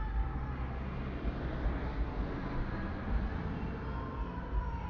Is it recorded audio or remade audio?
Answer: recorded